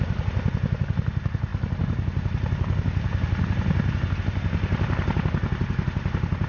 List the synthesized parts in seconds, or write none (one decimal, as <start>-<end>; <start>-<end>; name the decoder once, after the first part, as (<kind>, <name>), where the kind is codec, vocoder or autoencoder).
none